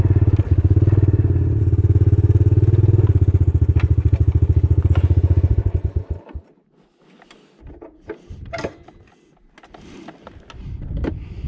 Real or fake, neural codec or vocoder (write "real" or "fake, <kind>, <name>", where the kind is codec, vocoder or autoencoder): real